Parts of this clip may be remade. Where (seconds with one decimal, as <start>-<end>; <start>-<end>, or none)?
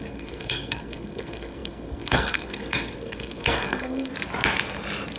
0.0-4.1